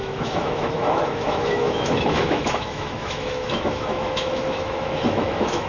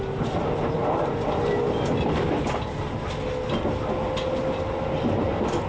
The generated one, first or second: first